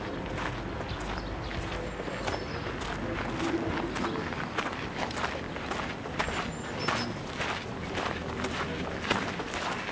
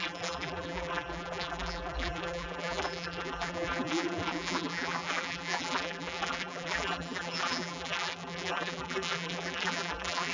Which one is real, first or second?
first